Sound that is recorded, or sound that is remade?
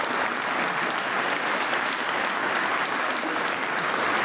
recorded